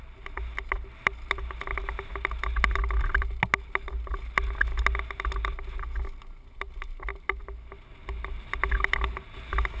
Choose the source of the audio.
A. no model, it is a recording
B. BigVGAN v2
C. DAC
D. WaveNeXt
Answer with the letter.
A